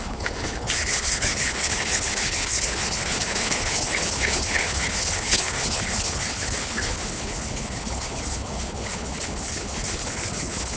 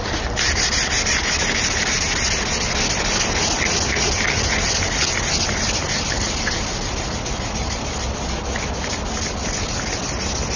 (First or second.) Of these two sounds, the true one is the second